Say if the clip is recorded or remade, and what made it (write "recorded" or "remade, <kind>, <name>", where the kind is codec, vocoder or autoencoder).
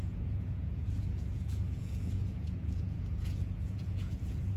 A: remade, vocoder, Vocos